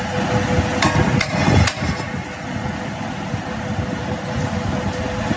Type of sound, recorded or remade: recorded